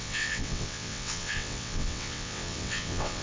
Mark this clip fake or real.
fake